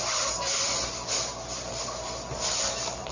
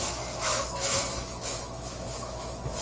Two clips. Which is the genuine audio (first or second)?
first